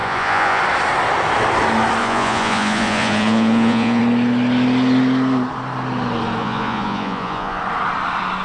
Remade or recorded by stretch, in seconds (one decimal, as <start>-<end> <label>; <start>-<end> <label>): 0.0-0.6 remade; 0.6-2.0 recorded; 2.0-4.0 remade; 4.0-6.4 recorded; 6.4-7.6 remade; 7.6-8.4 recorded